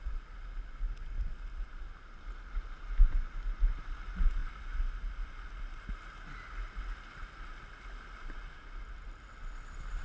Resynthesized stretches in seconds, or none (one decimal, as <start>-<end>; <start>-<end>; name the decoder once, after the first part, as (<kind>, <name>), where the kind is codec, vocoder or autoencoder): none